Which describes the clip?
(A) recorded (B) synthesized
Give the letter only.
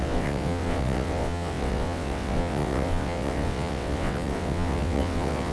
B